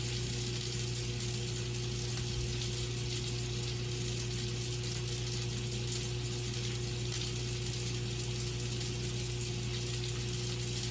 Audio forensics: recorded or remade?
recorded